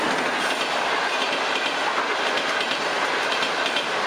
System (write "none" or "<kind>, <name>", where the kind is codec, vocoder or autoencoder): none